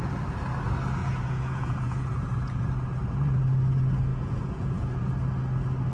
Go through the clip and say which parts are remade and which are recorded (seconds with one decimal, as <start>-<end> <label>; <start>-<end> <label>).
0.0-1.0 recorded; 1.0-2.7 remade; 2.7-4.1 recorded; 4.1-5.1 remade; 5.1-5.9 recorded